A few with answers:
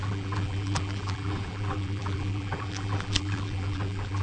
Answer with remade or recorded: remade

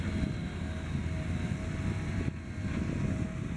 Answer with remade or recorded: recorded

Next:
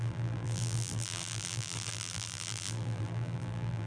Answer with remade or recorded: remade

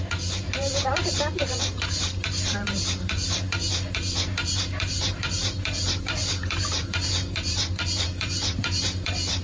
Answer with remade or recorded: remade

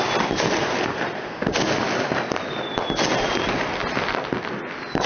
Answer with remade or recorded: recorded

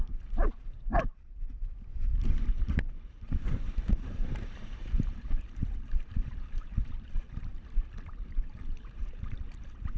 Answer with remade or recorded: remade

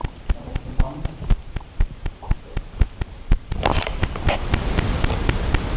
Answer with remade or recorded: remade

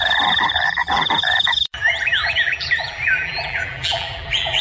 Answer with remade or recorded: remade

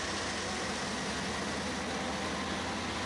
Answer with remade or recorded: recorded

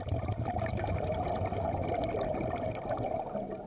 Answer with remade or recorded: recorded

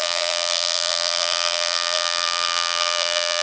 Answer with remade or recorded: remade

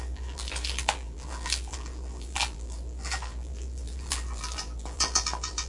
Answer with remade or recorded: remade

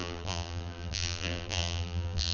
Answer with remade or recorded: remade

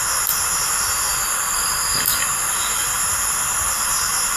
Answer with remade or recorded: recorded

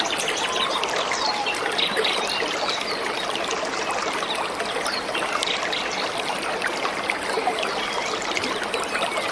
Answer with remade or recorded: remade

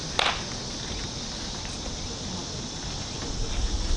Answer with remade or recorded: recorded